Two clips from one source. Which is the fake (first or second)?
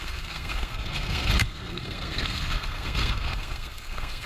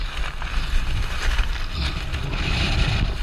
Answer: first